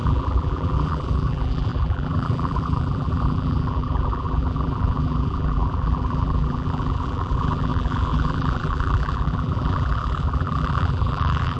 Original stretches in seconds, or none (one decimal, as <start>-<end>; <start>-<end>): none